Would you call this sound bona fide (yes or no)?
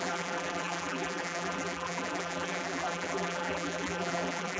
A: no